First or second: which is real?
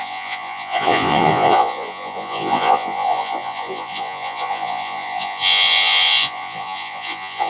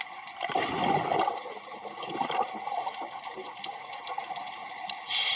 second